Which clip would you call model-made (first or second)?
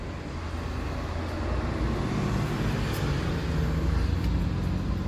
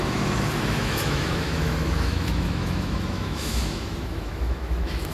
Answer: second